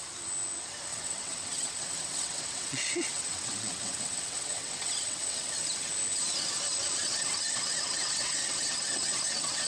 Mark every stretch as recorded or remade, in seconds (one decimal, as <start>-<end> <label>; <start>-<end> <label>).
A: 0.0-0.9 recorded; 0.9-5.9 remade; 5.9-7.0 recorded; 7.0-9.7 remade